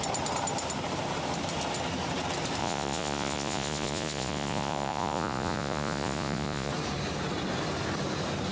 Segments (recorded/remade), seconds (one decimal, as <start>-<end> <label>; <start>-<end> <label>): 0.0-2.6 recorded; 2.6-6.7 remade; 6.7-8.5 recorded